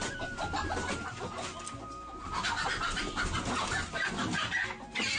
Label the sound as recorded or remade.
recorded